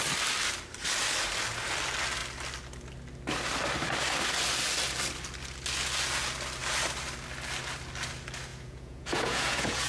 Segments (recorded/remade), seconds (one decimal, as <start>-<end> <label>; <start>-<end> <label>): 0.0-8.5 recorded; 8.5-9.9 remade

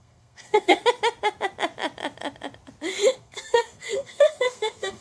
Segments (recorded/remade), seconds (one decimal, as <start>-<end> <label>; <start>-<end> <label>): 0.0-0.8 remade; 0.8-3.2 recorded; 3.2-5.0 remade

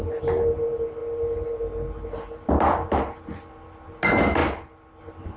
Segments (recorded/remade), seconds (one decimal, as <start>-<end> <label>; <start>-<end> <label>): 0.0-5.4 recorded

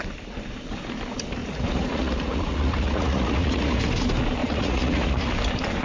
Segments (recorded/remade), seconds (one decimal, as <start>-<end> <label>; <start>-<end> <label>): 0.0-1.4 recorded; 1.4-3.8 remade; 3.8-4.4 recorded; 4.4-5.3 remade; 5.3-5.8 recorded

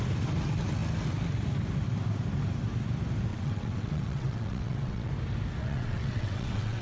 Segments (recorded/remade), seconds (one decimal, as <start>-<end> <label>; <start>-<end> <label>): 0.0-3.3 recorded; 3.3-5.1 remade; 5.1-5.6 recorded; 5.6-6.8 remade

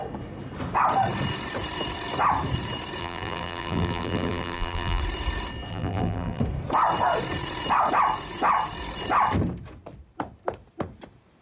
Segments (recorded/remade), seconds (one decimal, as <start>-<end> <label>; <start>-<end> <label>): 0.0-3.0 recorded; 3.0-5.0 remade; 5.0-5.7 recorded; 5.7-6.4 remade; 6.4-11.4 recorded

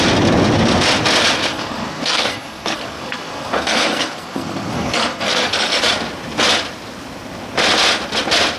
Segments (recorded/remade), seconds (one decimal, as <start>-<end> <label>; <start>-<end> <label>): 0.0-1.5 recorded; 1.5-5.8 remade; 5.8-8.6 recorded

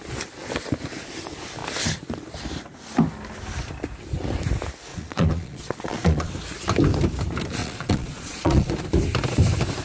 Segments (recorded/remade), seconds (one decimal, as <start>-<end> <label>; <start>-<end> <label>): 0.0-4.9 recorded; 4.9-6.3 remade; 6.3-7.6 recorded; 7.6-8.7 remade; 8.7-9.8 recorded